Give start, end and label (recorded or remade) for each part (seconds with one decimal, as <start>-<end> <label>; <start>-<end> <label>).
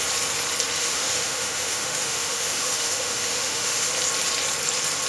0.0-0.8 recorded; 0.8-3.9 remade; 3.9-5.1 recorded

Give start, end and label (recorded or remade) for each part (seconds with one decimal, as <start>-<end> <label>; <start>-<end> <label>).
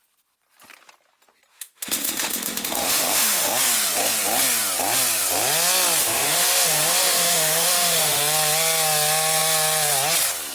0.0-1.5 recorded; 1.5-3.5 remade; 3.5-6.0 recorded; 6.0-8.2 remade; 8.2-10.5 recorded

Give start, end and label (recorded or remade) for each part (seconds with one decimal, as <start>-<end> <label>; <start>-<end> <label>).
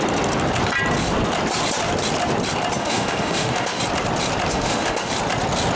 0.0-2.8 recorded; 2.8-3.8 remade; 3.8-4.5 recorded; 4.5-5.1 remade; 5.1-5.8 recorded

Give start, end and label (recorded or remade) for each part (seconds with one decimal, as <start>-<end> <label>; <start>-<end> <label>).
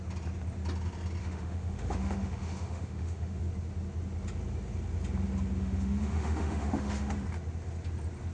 0.0-1.2 recorded; 1.2-3.4 remade; 3.4-5.6 recorded; 5.6-7.1 remade; 7.1-8.3 recorded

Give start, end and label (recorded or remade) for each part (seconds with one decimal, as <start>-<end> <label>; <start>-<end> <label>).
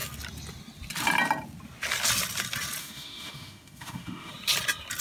0.0-2.8 recorded; 2.8-4.3 remade; 4.3-5.0 recorded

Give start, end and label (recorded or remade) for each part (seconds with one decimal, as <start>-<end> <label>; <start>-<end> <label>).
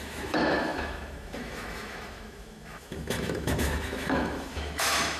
0.0-5.2 remade